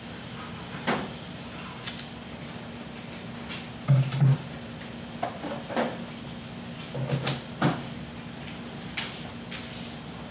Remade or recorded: recorded